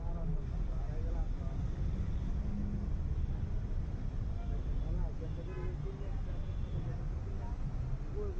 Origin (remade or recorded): recorded